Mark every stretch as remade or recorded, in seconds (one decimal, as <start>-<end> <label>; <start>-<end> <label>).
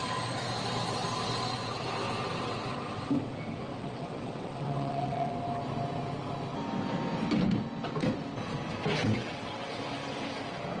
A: 0.0-3.7 recorded; 3.7-5.3 remade; 5.3-9.0 recorded; 9.0-9.8 remade; 9.8-10.8 recorded